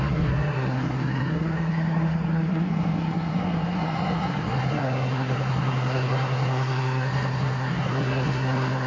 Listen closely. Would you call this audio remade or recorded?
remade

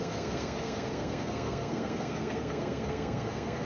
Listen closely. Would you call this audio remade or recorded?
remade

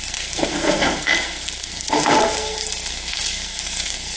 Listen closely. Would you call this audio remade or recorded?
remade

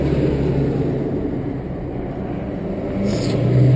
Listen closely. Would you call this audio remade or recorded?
recorded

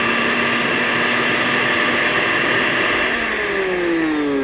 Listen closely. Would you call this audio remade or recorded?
recorded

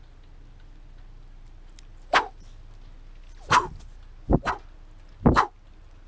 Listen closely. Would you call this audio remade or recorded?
recorded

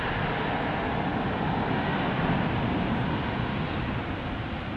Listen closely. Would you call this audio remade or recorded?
recorded